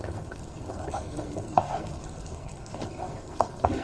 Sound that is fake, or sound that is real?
fake